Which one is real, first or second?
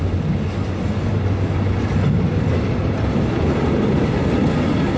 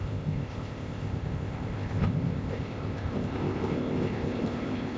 first